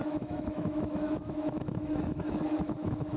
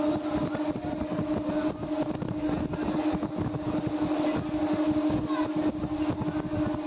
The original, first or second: second